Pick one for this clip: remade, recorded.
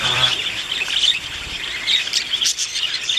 remade